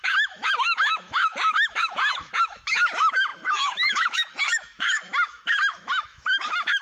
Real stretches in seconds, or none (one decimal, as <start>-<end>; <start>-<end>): none